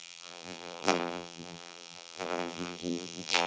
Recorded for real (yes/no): no